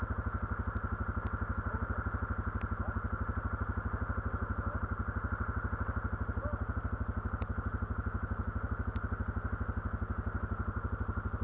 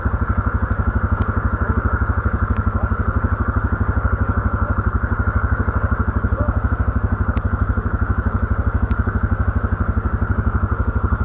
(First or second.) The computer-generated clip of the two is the second